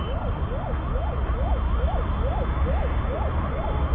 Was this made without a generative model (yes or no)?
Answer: yes